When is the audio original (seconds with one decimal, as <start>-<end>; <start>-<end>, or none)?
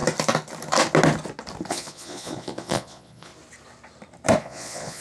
0.0-1.7; 3.3-4.4